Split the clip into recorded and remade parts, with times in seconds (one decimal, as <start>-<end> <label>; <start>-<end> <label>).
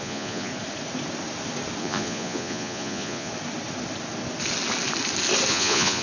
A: 0.0-0.5 remade; 0.5-1.8 recorded; 1.8-3.3 remade; 3.3-5.5 recorded; 5.5-6.0 remade